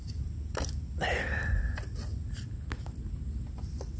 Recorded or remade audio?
recorded